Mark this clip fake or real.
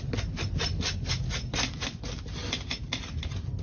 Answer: real